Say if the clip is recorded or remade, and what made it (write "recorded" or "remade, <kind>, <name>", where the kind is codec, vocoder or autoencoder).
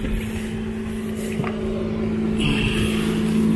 recorded